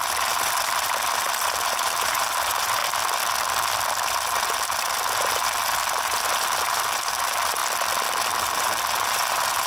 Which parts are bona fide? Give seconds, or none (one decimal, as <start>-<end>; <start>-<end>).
2.8-4.1; 7.6-8.4